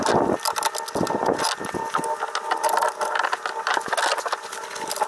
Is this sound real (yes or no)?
yes